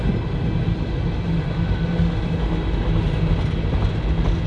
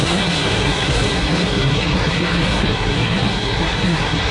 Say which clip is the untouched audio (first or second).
first